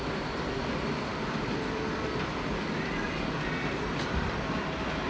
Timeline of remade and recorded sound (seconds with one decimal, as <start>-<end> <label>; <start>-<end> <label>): 0.0-5.1 recorded